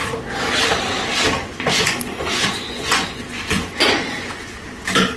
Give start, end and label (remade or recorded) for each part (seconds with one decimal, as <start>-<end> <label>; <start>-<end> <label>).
0.0-1.4 recorded; 1.4-4.5 remade; 4.5-5.2 recorded